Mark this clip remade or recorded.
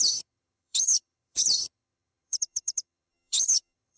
remade